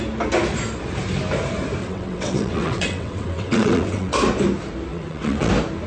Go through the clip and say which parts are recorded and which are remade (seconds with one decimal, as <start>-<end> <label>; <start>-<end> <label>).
0.0-1.8 recorded; 1.8-4.1 remade; 4.1-4.9 recorded; 4.9-5.5 remade; 5.5-5.9 recorded